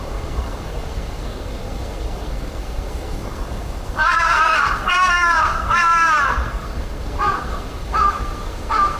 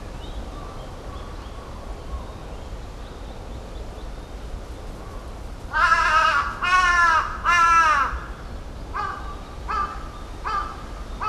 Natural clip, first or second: second